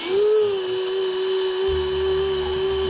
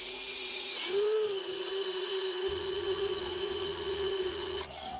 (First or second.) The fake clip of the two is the second